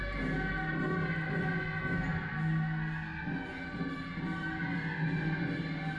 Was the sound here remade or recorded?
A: recorded